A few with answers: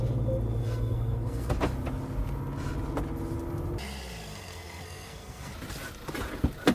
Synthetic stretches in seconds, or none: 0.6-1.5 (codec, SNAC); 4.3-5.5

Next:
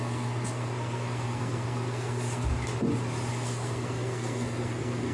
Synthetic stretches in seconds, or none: 0.0-2.5 (codec, SNAC); 3.3-5.1